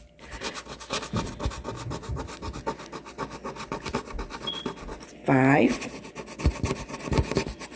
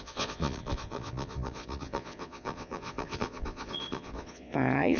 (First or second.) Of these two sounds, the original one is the first